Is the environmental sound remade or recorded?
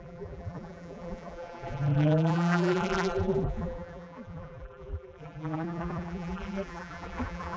remade